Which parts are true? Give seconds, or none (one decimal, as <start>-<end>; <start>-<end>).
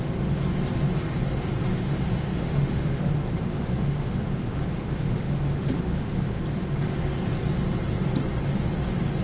0.0-1.7; 6.4-9.2